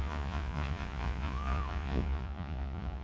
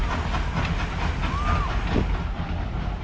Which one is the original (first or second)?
second